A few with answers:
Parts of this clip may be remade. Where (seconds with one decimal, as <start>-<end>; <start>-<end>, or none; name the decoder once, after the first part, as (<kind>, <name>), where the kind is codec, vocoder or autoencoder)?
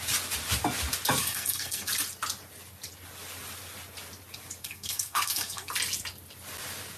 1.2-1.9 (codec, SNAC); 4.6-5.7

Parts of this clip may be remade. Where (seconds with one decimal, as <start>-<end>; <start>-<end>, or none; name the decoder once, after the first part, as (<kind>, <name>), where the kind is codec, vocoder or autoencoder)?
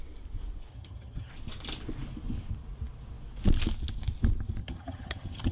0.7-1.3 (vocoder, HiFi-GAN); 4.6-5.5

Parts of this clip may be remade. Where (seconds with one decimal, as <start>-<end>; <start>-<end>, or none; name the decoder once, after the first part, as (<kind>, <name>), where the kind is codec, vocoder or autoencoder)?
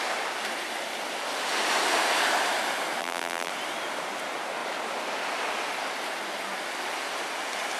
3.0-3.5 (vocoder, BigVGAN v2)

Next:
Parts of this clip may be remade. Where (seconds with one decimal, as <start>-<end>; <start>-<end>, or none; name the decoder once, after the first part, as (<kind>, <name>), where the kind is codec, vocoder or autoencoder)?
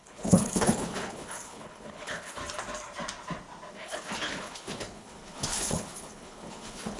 0.0-2.4 (codec, HILCodec); 3.7-7.0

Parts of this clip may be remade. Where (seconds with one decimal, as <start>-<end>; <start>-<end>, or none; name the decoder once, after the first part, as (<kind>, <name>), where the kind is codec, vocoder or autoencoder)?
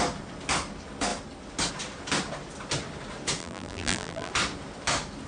3.4-4.3 (vocoder, BigVGAN v2)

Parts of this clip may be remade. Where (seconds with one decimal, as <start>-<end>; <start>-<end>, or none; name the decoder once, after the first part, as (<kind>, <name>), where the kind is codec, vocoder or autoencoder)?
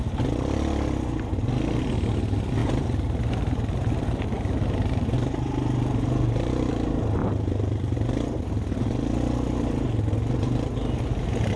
2.6-6.7 (vocoder, BigVGAN v2); 7.2-8.4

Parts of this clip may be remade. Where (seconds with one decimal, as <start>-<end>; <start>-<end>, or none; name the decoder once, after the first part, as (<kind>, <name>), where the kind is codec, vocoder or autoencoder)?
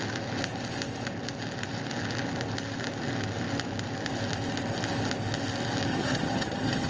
5.9-6.9 (vocoder, HiFi-GAN)